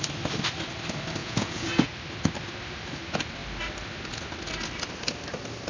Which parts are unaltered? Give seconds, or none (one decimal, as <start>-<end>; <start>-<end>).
0.0-1.2; 1.9-5.7